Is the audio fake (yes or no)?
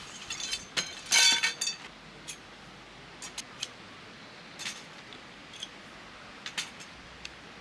no